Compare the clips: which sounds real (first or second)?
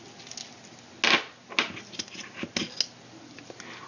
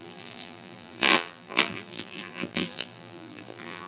first